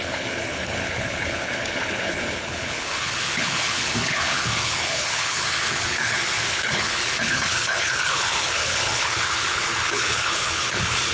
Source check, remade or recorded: remade